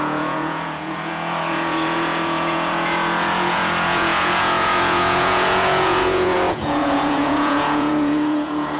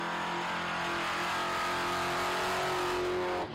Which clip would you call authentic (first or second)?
second